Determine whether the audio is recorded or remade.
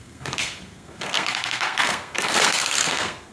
remade